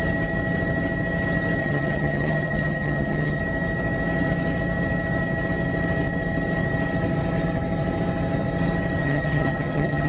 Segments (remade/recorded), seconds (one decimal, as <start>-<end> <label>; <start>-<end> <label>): 0.0-1.6 recorded; 1.6-3.4 remade; 3.4-9.0 recorded; 9.0-10.1 remade